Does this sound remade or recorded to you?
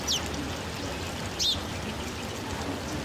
recorded